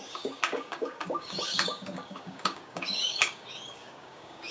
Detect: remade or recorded remade